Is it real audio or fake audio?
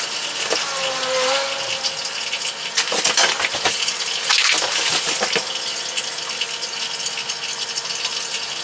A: real